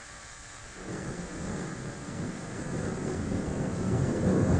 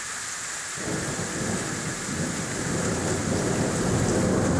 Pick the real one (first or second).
second